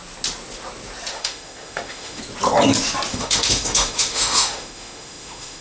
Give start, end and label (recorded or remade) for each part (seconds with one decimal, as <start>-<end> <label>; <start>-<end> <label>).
0.0-1.1 recorded; 1.1-2.2 remade; 2.2-3.1 recorded; 3.1-5.6 remade